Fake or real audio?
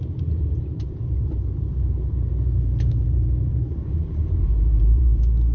fake